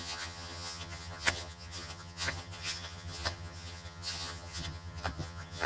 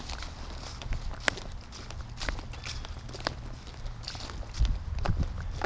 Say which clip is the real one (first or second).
second